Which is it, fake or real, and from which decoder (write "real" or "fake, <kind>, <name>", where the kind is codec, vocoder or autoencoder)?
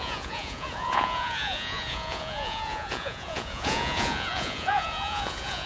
fake, vocoder, Vocos